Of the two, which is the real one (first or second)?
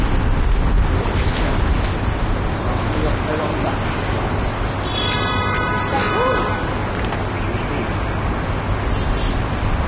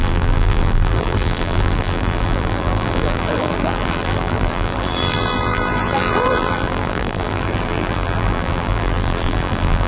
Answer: first